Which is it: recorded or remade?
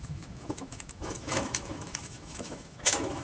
remade